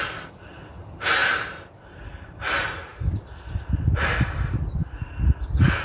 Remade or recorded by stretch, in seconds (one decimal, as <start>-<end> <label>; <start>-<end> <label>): 0.0-1.2 recorded; 1.2-2.2 remade; 2.2-5.8 recorded

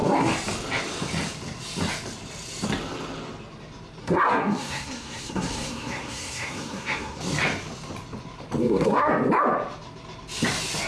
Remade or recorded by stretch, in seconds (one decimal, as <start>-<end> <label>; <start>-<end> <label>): 0.0-4.0 recorded; 4.0-7.2 remade; 7.2-8.6 recorded; 8.6-9.1 remade; 9.1-10.9 recorded

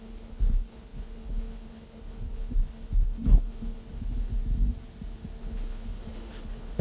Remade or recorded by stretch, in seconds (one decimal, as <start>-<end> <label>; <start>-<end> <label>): 0.0-4.3 remade; 4.3-5.4 recorded; 5.4-6.8 remade

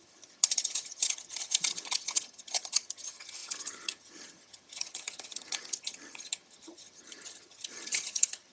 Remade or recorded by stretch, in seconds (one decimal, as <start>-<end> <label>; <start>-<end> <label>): 0.0-8.5 remade

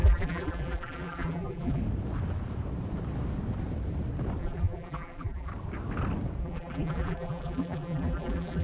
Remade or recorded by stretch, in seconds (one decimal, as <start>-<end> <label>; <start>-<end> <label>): 0.0-1.8 remade; 1.8-4.4 recorded; 4.4-5.5 remade; 5.5-6.4 recorded; 6.4-8.6 remade

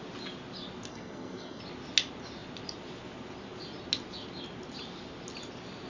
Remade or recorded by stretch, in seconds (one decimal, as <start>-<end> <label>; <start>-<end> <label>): 0.0-0.9 recorded; 0.9-1.6 remade; 1.6-5.9 recorded

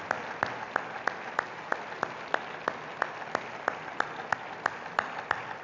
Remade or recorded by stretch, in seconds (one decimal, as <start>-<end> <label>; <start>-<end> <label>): 0.0-5.6 recorded